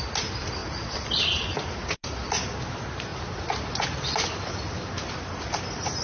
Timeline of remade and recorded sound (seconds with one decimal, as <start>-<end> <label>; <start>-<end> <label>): 0.0-0.6 recorded; 0.6-1.7 remade; 1.7-6.0 recorded